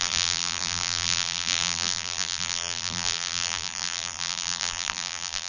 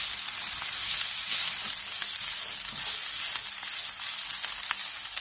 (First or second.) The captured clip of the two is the second